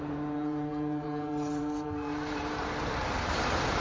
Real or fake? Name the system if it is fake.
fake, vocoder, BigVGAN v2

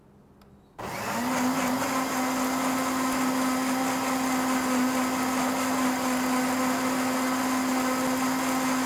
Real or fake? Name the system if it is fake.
real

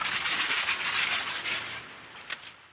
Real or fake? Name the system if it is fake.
fake, vocoder, BigVGAN v2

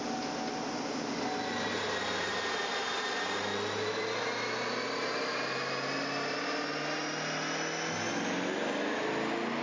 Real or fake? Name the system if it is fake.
real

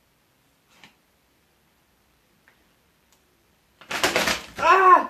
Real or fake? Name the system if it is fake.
fake, vocoder, BigVGAN v2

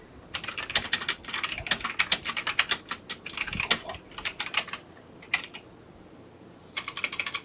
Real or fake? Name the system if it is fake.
real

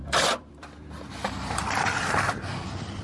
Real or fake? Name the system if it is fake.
fake, vocoder, BigVGAN v2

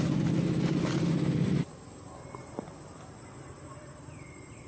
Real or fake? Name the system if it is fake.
fake, vocoder, BigVGAN v2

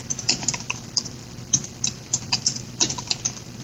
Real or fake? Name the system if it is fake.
fake, vocoder, BigVGAN v2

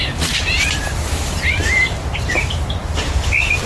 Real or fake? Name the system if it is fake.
real